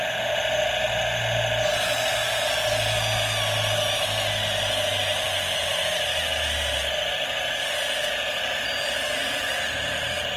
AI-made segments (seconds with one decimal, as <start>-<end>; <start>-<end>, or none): none